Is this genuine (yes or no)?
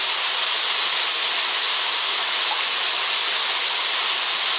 yes